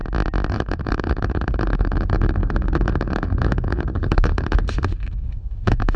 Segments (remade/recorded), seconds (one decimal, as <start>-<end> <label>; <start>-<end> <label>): 0.0-0.5 recorded; 0.5-6.0 remade

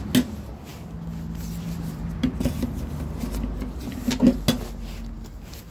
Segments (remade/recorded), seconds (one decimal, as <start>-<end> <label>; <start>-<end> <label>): 0.0-5.7 recorded

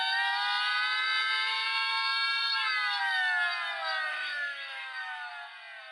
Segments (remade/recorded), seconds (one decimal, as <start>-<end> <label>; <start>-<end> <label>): 0.0-4.1 recorded; 4.1-5.3 remade; 5.3-5.9 recorded